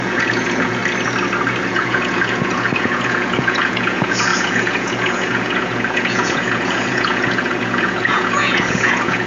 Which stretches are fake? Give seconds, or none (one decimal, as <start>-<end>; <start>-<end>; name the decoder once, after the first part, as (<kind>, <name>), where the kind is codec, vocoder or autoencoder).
0.0-0.8 (vocoder, Vocos); 1.7-9.3